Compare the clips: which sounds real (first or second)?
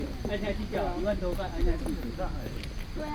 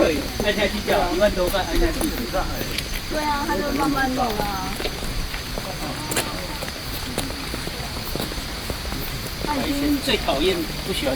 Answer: first